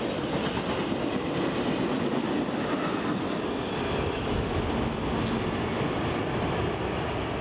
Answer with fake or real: real